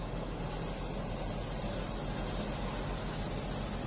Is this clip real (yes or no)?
yes